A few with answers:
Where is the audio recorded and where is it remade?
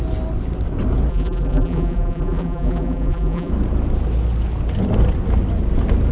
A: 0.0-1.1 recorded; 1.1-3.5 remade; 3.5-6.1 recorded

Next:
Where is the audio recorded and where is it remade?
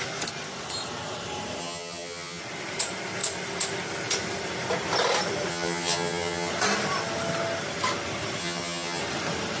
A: 0.0-1.6 recorded; 1.6-2.4 remade; 2.4-5.5 recorded; 5.5-6.5 remade; 6.5-8.4 recorded; 8.4-9.0 remade; 9.0-9.6 recorded